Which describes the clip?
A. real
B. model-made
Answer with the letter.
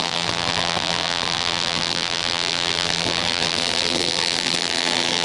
B